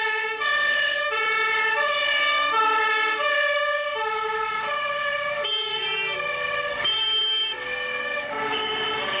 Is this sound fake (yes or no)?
yes